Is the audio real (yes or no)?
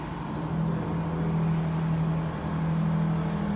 yes